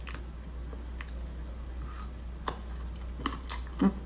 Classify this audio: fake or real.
real